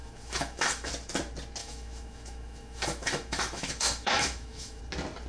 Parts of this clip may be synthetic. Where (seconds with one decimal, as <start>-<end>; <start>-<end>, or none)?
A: 0.0-0.9; 1.6-4.8